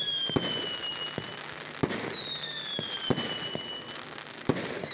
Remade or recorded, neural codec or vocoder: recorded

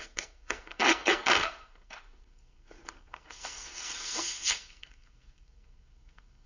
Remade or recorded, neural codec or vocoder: remade, codec, SNAC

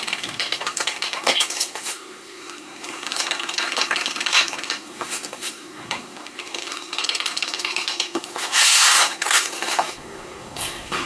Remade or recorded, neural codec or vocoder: remade, codec, SNAC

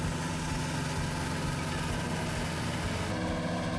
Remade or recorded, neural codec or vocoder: recorded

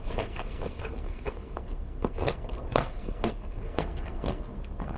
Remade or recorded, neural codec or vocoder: remade, codec, SNAC